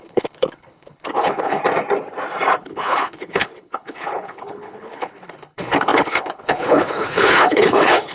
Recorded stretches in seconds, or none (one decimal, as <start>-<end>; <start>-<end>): 1.6-2.6